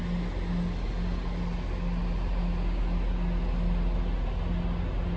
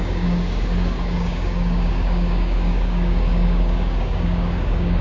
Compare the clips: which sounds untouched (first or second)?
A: first